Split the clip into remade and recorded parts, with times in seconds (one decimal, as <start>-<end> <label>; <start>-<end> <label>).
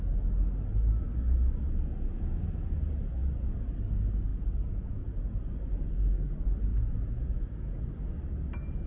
0.0-4.3 recorded; 4.3-5.4 remade; 5.4-6.7 recorded; 6.7-7.8 remade; 7.8-8.9 recorded